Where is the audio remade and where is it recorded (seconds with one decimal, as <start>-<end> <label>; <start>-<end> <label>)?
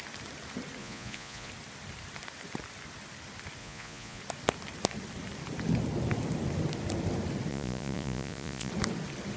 0.0-0.8 recorded; 0.8-1.5 remade; 1.5-3.6 recorded; 3.6-4.2 remade; 4.2-7.5 recorded; 7.5-8.7 remade; 8.7-9.4 recorded